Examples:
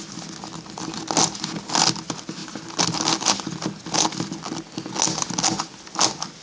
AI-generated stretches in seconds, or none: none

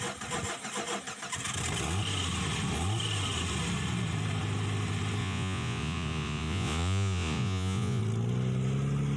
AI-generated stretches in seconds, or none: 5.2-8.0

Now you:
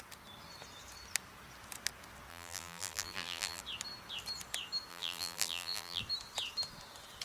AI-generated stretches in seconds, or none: 2.3-3.6; 4.9-6.0

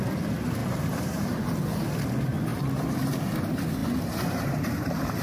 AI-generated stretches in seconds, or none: 0.6-1.4; 3.8-5.2

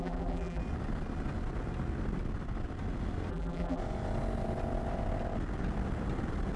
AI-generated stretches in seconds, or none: 0.0-0.6; 3.3-3.8

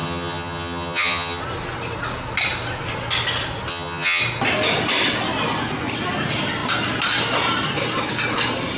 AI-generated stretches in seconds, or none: 0.0-1.4; 3.7-4.2

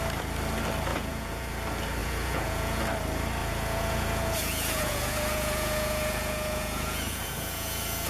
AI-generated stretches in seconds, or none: 0.9-1.5; 2.0-2.8; 3.4-8.1